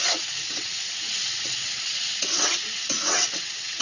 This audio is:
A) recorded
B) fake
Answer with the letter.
B